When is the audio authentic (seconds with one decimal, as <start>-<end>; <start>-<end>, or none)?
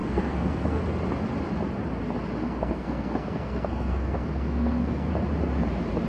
0.8-2.4; 5.1-6.1